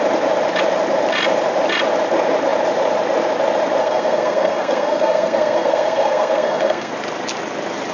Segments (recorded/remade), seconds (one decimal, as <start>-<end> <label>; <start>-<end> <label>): 0.0-3.8 recorded; 3.8-6.9 remade; 6.9-7.9 recorded